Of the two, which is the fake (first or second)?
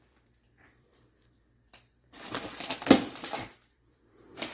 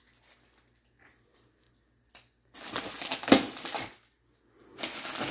first